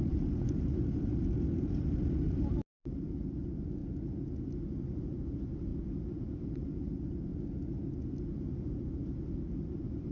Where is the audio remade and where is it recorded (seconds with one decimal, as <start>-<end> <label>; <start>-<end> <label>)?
0.0-3.8 remade; 3.8-4.7 recorded; 4.7-5.7 remade; 5.7-6.7 recorded; 6.7-7.3 remade; 7.3-8.7 recorded; 8.7-10.1 remade